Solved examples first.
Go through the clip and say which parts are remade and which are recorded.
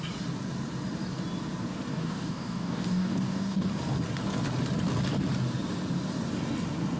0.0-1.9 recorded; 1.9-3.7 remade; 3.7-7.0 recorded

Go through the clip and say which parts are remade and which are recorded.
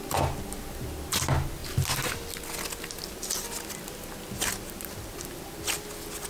0.0-6.3 recorded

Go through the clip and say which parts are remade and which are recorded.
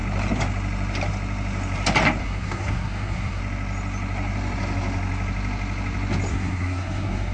0.0-2.2 recorded; 2.2-3.4 remade; 3.4-6.3 recorded; 6.3-7.3 remade